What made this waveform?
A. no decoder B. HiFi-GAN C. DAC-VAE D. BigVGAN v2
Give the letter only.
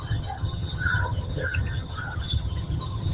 B